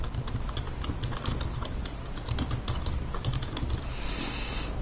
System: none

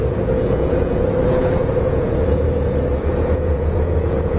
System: vocoder, Vocos